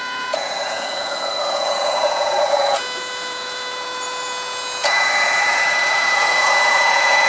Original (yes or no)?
no